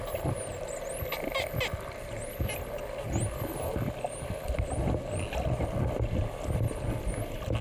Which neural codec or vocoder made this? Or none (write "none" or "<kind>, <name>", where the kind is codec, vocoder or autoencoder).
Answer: none